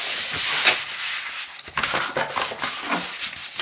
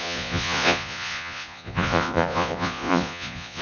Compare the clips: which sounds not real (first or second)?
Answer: second